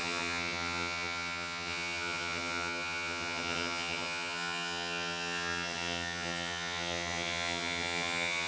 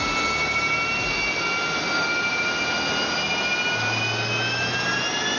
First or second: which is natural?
second